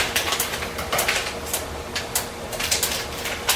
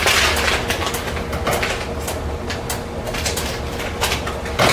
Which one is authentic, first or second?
second